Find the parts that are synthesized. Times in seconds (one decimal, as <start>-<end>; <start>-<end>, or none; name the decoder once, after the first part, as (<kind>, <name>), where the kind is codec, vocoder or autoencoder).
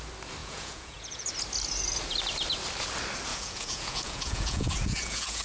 0.4-1.3 (vocoder, Vocos); 3.3-5.4